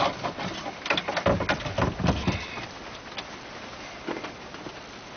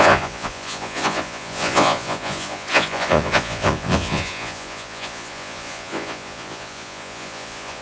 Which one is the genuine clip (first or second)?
first